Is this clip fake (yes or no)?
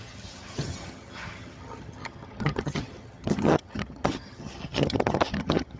yes